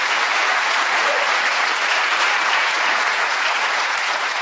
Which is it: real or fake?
fake